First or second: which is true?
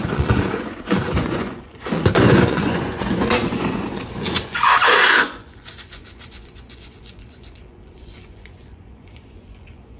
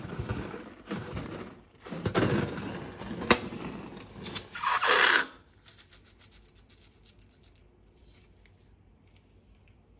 second